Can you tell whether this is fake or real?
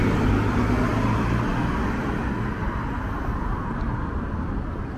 real